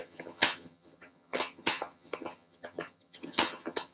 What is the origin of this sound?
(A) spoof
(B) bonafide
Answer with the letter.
A